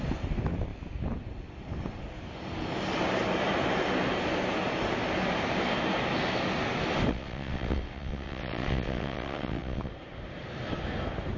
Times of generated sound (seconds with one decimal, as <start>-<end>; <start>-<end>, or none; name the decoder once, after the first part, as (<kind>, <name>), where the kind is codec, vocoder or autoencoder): 7.1-9.9 (vocoder, WaveNeXt)